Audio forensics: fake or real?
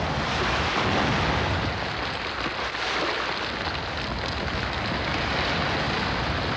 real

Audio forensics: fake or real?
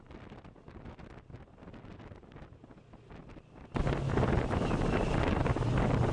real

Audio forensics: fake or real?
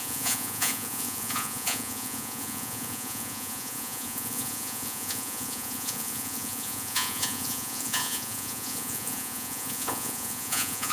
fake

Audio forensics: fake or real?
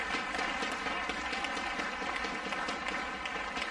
real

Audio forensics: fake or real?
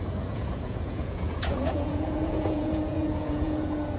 fake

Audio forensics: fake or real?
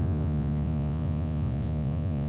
fake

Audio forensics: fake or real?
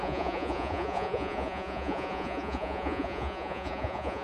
fake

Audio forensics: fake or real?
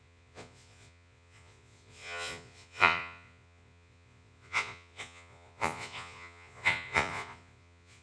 fake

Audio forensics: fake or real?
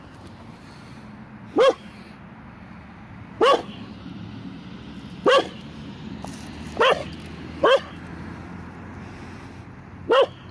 real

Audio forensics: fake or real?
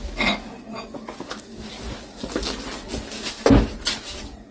real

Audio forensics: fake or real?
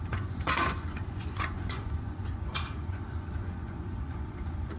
fake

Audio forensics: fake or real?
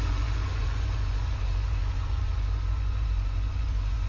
fake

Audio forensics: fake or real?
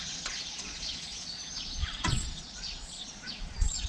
fake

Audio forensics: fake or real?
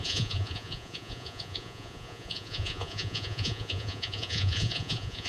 fake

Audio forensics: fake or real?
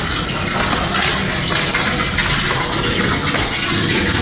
real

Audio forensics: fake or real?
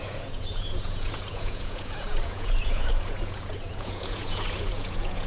fake